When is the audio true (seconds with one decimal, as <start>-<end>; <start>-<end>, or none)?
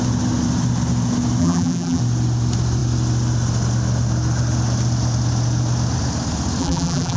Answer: 0.0-1.4; 2.0-6.6